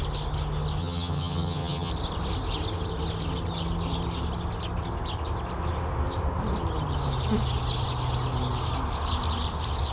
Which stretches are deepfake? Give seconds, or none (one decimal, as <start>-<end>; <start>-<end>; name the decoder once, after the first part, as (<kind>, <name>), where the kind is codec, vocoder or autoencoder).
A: 0.8-1.9 (vocoder, HiFi-GAN)